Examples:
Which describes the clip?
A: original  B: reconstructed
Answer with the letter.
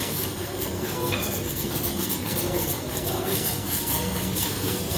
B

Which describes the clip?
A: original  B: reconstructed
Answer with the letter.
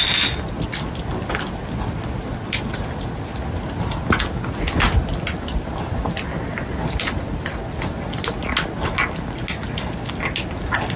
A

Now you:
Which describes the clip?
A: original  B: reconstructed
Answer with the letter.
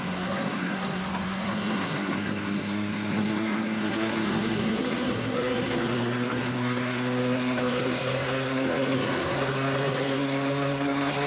B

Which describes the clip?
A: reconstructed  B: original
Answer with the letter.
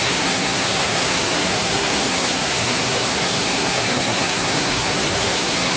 A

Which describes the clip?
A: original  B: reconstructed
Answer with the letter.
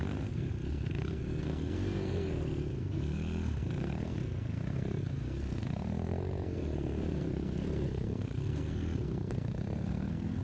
B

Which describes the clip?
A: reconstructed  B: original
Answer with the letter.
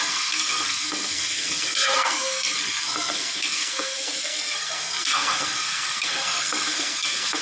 A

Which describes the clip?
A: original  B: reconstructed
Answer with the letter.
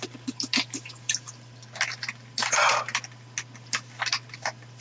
A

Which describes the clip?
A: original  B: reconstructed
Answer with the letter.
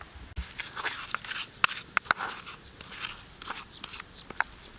A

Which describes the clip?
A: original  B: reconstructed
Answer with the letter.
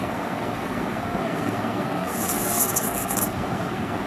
B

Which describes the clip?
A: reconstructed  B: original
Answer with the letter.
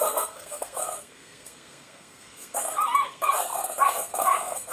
A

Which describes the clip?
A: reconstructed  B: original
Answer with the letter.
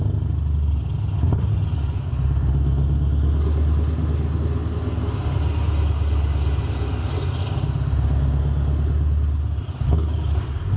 B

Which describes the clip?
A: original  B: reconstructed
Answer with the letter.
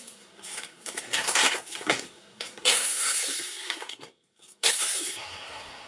B